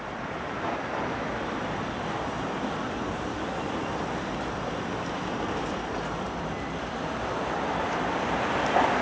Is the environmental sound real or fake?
fake